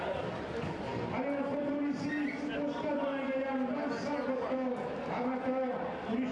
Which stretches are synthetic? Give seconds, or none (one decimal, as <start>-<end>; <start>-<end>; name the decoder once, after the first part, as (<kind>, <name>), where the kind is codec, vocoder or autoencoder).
none